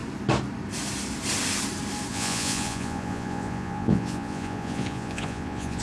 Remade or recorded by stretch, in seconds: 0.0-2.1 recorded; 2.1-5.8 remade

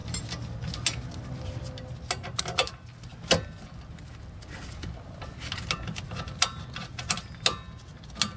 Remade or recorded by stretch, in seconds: 0.0-8.4 recorded